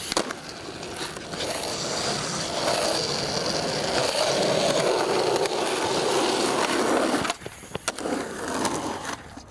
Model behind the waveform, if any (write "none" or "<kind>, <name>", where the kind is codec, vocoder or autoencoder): none